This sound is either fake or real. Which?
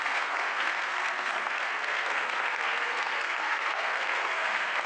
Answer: fake